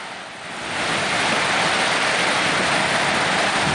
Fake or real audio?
real